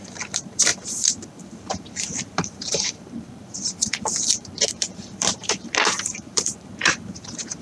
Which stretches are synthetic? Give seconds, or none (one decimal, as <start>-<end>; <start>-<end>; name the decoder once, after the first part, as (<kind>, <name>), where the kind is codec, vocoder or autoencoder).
0.0-7.6 (vocoder, BigVGAN v2)